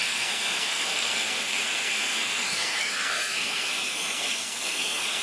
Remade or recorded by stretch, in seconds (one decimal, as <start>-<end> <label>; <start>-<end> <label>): 0.0-5.2 remade